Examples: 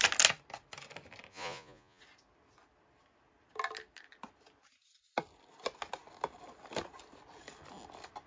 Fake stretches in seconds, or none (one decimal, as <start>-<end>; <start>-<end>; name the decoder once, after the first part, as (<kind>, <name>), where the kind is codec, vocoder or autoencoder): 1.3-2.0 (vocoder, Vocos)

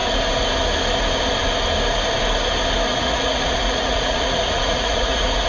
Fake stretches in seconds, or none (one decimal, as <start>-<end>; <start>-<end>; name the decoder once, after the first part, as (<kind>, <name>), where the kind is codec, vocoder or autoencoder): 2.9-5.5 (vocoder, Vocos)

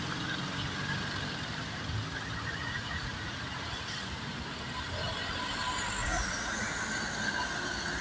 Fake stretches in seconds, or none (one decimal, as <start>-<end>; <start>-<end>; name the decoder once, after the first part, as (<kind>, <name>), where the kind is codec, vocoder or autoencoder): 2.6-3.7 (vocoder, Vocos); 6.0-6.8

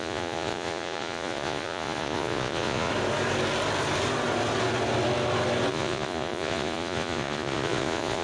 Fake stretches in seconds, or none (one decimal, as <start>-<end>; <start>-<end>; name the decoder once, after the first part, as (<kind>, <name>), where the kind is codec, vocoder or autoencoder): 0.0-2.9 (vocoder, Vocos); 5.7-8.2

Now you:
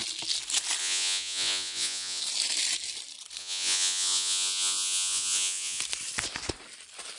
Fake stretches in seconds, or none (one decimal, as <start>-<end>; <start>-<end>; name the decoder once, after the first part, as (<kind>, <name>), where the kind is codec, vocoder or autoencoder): 0.8-2.2 (vocoder, Vocos); 3.4-5.8